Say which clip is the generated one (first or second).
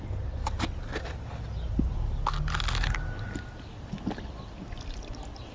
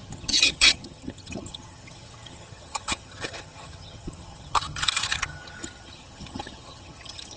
second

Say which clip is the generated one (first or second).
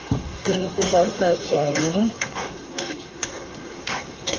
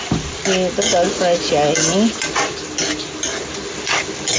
first